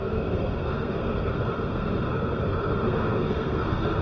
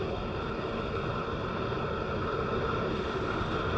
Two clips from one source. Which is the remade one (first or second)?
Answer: first